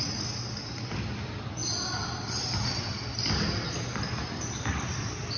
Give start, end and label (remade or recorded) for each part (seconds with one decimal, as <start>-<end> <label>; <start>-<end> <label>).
0.0-5.4 recorded